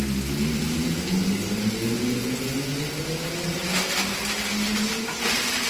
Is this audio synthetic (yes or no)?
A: no